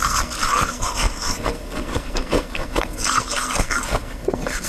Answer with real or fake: fake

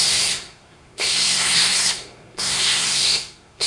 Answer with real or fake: fake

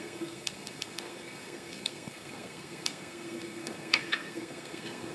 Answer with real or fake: fake